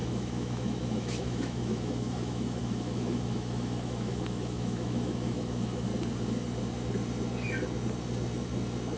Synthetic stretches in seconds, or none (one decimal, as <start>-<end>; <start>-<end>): 0.0-5.9